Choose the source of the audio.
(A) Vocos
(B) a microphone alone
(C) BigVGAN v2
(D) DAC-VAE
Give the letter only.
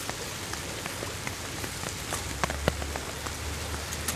B